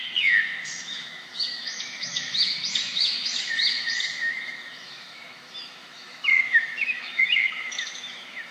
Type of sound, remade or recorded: remade